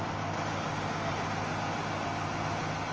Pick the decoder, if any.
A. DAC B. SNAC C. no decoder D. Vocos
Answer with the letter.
C